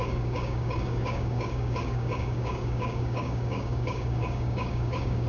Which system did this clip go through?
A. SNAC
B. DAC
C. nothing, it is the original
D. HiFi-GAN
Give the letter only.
B